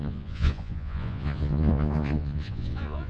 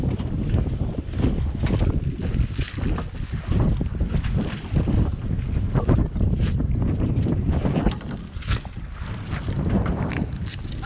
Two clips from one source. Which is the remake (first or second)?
first